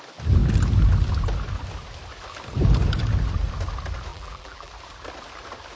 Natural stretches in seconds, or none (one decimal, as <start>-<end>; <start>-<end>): 0.0-4.1; 4.7-5.8